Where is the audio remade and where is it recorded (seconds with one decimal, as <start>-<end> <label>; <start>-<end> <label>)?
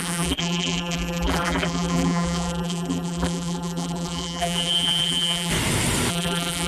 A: 0.0-5.5 remade; 5.5-6.1 recorded; 6.1-6.7 remade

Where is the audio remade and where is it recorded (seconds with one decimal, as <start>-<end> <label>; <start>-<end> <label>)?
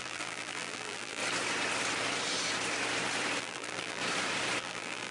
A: 0.0-1.2 remade; 1.2-3.4 recorded; 3.4-4.0 remade; 4.0-4.6 recorded; 4.6-5.1 remade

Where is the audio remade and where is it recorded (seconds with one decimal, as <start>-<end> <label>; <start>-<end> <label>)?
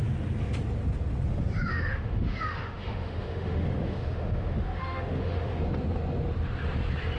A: 0.0-1.3 recorded; 1.3-5.6 remade; 5.6-7.2 recorded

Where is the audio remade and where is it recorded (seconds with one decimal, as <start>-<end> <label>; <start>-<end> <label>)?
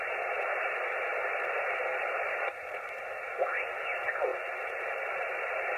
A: 0.0-1.9 recorded; 1.9-3.0 remade; 3.0-5.8 recorded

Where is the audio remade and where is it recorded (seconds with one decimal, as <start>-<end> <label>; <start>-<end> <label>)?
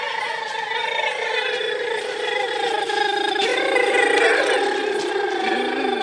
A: 0.0-0.8 recorded; 0.8-2.0 remade; 2.0-6.0 recorded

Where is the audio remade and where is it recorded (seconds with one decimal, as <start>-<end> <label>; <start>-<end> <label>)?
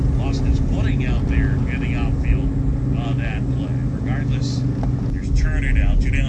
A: 0.0-6.3 recorded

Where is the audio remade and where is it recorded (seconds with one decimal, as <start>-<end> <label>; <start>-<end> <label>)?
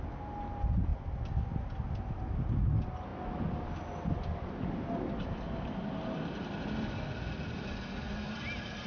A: 0.0-8.9 recorded